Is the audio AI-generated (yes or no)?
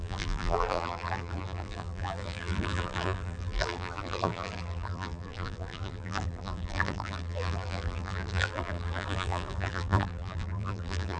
yes